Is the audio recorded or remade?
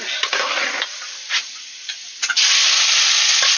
recorded